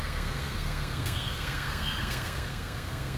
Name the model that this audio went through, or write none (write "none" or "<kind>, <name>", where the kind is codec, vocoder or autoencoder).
codec, SNAC